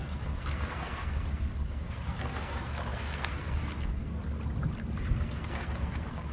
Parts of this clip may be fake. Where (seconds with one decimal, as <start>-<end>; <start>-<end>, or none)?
0.0-4.2; 5.0-6.3